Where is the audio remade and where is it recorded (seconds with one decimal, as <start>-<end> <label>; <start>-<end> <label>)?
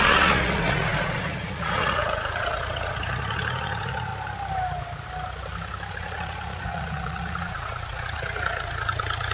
0.0-4.1 remade; 4.1-5.9 recorded; 5.9-9.3 remade